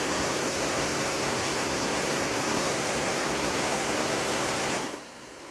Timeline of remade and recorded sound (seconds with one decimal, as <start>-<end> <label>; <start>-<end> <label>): 0.0-5.5 remade